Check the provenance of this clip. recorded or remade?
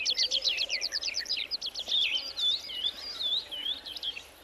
recorded